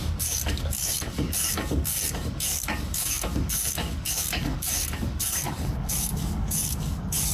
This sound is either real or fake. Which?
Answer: fake